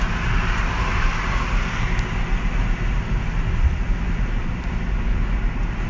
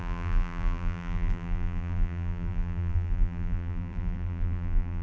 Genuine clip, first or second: first